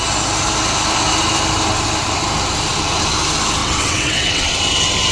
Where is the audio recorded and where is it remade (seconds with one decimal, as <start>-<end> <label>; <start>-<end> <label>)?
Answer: 0.0-3.6 recorded; 3.6-4.5 remade; 4.5-5.1 recorded